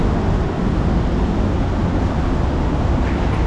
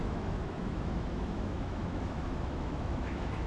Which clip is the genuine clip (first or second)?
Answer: first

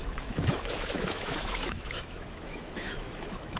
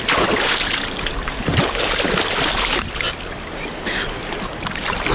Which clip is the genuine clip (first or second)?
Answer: second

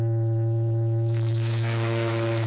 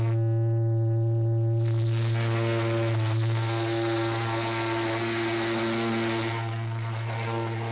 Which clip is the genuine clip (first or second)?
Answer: second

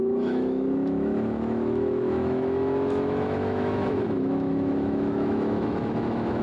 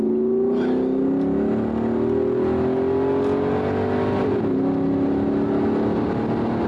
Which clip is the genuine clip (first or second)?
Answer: second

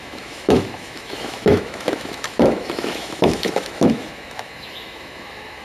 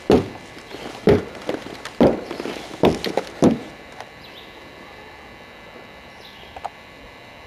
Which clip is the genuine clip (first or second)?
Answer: second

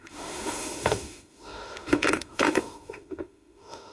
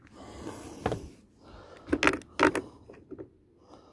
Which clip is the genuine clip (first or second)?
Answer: second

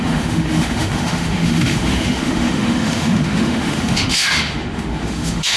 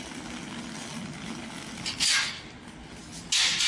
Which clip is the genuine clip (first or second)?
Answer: second